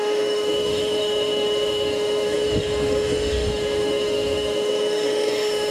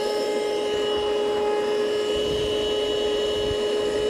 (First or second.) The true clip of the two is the second